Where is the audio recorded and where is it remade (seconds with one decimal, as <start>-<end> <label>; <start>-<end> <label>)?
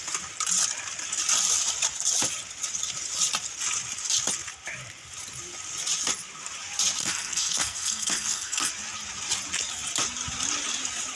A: 0.0-7.0 recorded; 7.0-8.7 remade; 8.7-11.1 recorded